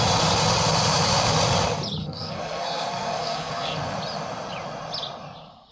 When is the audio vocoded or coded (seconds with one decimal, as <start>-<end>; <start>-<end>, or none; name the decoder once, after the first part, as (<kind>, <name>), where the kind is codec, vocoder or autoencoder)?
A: 2.0-3.8 (codec, SNAC)